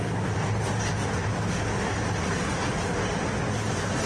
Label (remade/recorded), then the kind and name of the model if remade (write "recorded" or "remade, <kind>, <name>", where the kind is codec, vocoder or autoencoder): recorded